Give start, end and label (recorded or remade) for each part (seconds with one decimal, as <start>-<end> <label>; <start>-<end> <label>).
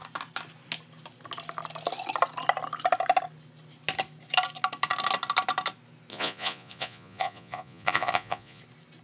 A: 0.0-6.1 recorded; 6.1-8.6 remade; 8.6-9.0 recorded